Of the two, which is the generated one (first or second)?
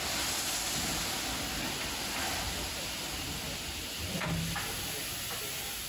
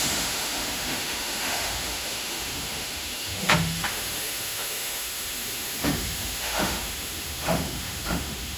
second